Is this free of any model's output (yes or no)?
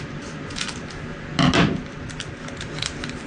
yes